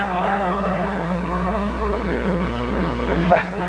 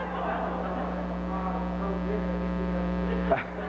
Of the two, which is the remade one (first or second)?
first